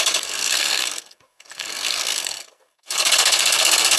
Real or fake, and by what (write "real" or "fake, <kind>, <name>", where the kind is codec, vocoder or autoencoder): fake, codec, SNAC